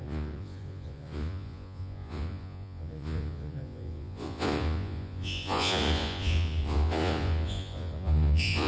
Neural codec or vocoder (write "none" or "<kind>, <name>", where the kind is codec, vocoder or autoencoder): vocoder, Vocos